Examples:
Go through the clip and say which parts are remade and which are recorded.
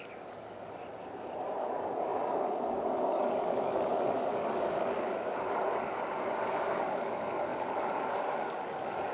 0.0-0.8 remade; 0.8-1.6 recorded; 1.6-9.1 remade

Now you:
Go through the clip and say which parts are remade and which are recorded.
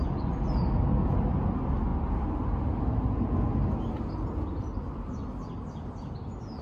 0.0-6.6 recorded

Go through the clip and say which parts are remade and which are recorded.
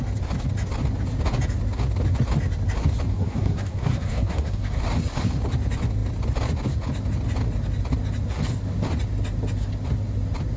0.0-3.1 recorded; 3.1-4.8 remade; 4.8-10.6 recorded